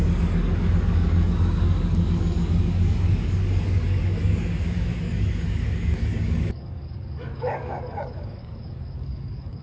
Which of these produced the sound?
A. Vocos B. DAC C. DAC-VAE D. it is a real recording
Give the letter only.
B